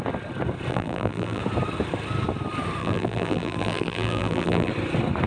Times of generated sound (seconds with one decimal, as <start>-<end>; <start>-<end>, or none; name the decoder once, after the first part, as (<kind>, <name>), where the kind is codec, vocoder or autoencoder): 0.7-1.4 (vocoder, BigVGAN v2); 2.8-4.7